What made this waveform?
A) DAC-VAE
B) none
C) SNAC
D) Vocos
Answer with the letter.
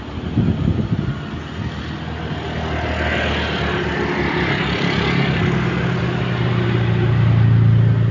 B